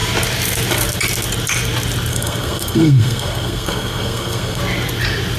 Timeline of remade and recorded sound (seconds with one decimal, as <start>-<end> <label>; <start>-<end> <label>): 0.0-2.1 recorded; 2.1-4.6 remade; 4.6-5.4 recorded